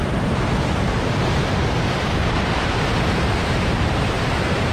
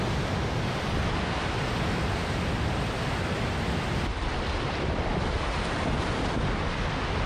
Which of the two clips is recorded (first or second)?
second